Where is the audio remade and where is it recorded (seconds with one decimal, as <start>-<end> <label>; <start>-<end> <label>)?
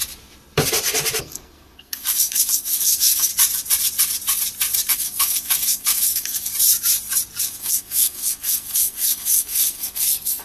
0.0-1.2 recorded; 1.2-3.3 remade; 3.3-4.9 recorded; 4.9-6.5 remade; 6.5-7.4 recorded; 7.4-10.4 remade